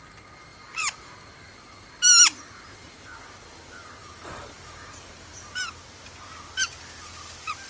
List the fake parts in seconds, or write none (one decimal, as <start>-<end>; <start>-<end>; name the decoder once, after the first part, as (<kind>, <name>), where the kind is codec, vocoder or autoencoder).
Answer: 0.5-1.1 (vocoder, BigVGAN v2); 4.0-5.8